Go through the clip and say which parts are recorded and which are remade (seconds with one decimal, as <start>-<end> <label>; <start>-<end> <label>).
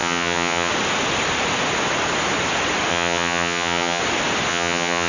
0.0-0.7 remade; 0.7-2.9 recorded; 2.9-4.0 remade; 4.0-4.5 recorded; 4.5-5.1 remade